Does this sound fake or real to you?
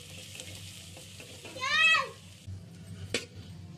real